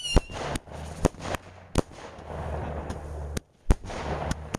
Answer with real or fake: real